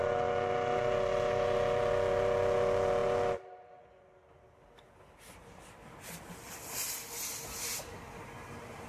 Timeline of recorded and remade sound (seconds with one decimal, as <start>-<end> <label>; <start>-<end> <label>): 0.0-8.9 recorded

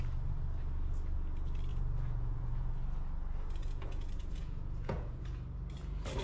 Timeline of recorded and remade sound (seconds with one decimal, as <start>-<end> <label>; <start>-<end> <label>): 0.0-1.7 recorded; 1.7-2.7 remade; 2.7-3.6 recorded; 3.6-5.2 remade; 5.2-6.2 recorded

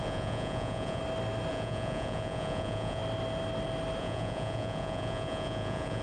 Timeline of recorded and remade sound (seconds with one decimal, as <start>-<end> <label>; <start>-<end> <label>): 0.0-1.0 remade; 1.0-1.5 recorded; 1.5-3.0 remade; 3.0-4.0 recorded; 4.0-6.0 remade

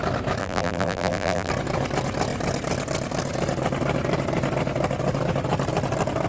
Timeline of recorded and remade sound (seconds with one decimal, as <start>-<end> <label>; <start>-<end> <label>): 0.0-0.4 recorded; 0.4-1.5 remade; 1.5-6.3 recorded

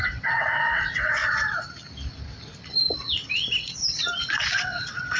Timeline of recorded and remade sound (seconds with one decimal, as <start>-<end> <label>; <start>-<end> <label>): 0.0-1.2 remade; 1.2-4.3 recorded; 4.3-5.2 remade

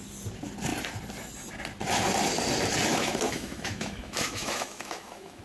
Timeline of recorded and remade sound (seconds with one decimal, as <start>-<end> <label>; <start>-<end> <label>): 0.0-2.9 recorded; 2.9-5.4 remade

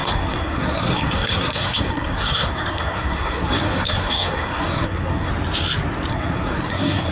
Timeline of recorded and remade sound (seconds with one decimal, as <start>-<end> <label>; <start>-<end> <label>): 0.0-5.3 remade; 5.3-6.1 recorded; 6.1-7.1 remade

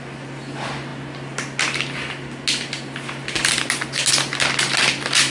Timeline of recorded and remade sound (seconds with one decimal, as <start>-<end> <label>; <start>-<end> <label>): 0.0-5.3 recorded